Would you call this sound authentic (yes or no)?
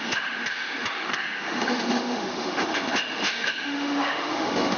no